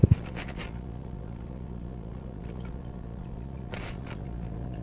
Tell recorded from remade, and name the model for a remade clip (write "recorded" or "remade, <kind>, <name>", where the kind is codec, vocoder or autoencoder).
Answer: remade, vocoder, Vocos